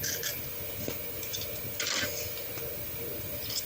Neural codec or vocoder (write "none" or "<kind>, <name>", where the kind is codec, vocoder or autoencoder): none